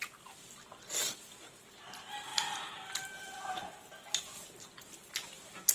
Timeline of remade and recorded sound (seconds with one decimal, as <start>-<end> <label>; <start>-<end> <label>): 0.0-5.7 recorded

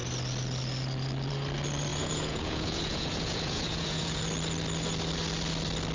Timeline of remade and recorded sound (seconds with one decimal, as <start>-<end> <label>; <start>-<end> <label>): 0.0-1.9 recorded; 1.9-4.2 remade; 4.2-5.9 recorded

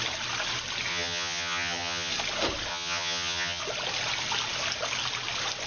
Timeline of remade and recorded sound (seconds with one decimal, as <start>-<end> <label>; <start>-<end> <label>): 0.0-0.9 recorded; 0.9-2.1 remade; 2.1-2.7 recorded; 2.7-3.6 remade; 3.6-5.7 recorded

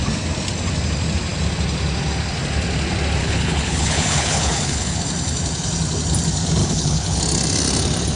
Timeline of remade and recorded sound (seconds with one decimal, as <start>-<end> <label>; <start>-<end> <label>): 0.0-3.2 recorded; 3.2-5.0 remade; 5.0-6.6 recorded; 6.6-7.2 remade; 7.2-8.2 recorded

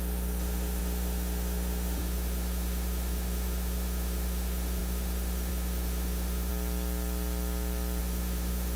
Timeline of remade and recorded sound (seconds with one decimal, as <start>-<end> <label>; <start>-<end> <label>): 0.0-6.5 remade; 6.5-8.0 recorded; 8.0-8.8 remade

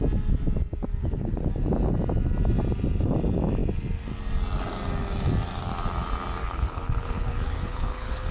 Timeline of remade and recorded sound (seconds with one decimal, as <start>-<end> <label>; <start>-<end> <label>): 0.0-1.0 recorded; 1.0-1.5 remade; 1.5-6.4 recorded; 6.4-8.3 remade